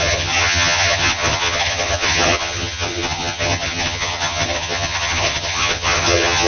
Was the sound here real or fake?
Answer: fake